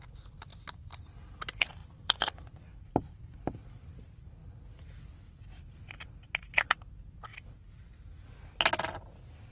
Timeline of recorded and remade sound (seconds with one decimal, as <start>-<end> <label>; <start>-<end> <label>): 0.0-4.4 remade; 4.4-5.9 recorded; 5.9-7.3 remade; 7.3-9.5 recorded